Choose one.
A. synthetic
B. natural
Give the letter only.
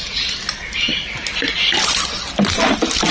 B